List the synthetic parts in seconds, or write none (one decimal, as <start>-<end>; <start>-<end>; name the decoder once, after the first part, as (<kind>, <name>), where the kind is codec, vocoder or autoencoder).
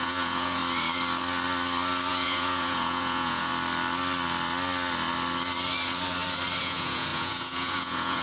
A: 0.0-0.6 (vocoder, Vocos); 2.1-3.5; 6.6-8.2